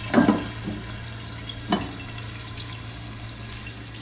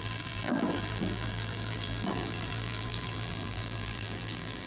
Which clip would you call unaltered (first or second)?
first